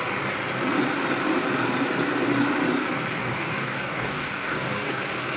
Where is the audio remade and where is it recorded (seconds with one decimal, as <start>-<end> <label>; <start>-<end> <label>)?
0.0-3.2 recorded; 3.2-5.0 remade; 5.0-5.4 recorded